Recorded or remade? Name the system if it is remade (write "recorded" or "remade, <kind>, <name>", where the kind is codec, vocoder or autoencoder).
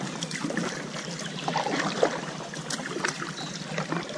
recorded